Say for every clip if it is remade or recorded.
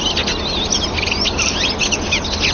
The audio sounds recorded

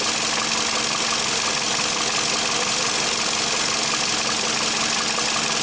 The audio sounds recorded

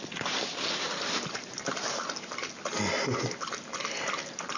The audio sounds recorded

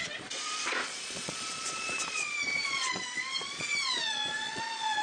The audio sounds remade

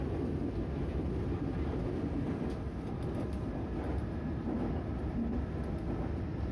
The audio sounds recorded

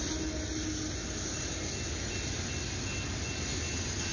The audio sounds recorded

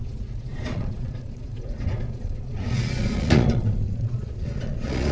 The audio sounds remade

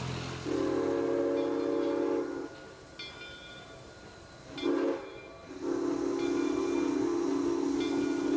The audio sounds recorded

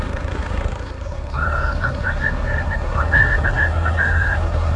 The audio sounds remade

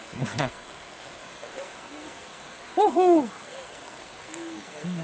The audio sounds remade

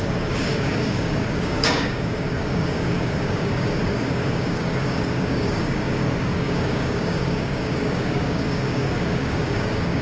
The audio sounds remade